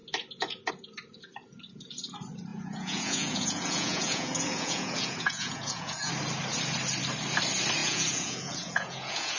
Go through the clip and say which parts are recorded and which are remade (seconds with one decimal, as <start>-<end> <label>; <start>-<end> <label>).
0.0-2.5 recorded; 2.5-6.1 remade; 6.1-7.8 recorded; 7.8-9.4 remade